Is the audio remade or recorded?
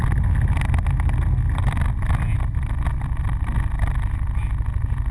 recorded